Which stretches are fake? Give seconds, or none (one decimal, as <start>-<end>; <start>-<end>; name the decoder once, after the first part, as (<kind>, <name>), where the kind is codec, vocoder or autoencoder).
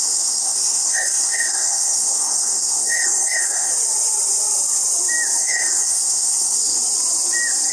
0.0-3.7 (codec, SNAC); 5.4-6.8